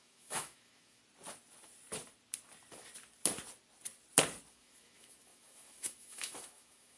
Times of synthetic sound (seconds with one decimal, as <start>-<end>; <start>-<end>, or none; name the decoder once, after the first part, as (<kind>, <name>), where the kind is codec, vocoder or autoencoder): 0.0-1.0 (autoencoder, DAC-VAE); 4.5-7.0